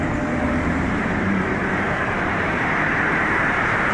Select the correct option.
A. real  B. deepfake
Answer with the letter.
B